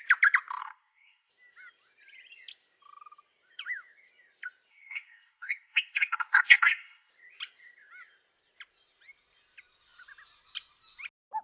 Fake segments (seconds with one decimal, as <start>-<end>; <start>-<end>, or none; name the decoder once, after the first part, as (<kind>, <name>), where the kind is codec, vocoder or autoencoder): 0.6-1.3 (codec, SNAC); 4.7-7.1